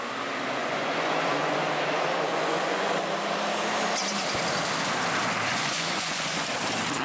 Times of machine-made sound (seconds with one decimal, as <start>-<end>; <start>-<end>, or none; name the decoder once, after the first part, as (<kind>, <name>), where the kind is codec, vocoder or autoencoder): 0.6-1.7 (vocoder, Vocos); 2.3-2.9; 5.5-6.5